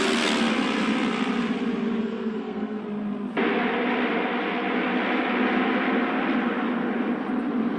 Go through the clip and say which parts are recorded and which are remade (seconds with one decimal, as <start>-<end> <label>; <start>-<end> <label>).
0.0-2.0 recorded; 2.0-2.8 remade; 2.8-7.8 recorded